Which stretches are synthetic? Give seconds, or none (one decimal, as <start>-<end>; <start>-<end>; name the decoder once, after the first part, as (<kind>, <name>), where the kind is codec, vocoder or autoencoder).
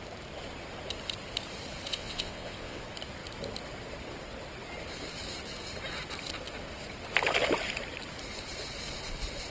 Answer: 1.9-2.8 (vocoder, WaveNeXt)